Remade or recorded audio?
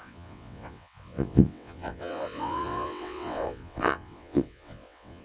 remade